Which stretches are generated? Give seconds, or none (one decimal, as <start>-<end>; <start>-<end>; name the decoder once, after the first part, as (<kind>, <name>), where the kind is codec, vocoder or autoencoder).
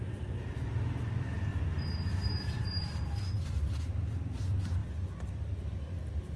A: 0.0-4.8 (vocoder, BigVGAN v2); 5.6-6.4